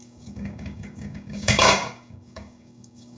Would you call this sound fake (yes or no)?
yes